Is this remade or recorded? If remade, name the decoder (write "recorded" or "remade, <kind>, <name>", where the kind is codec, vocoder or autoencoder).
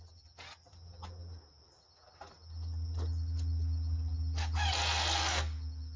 recorded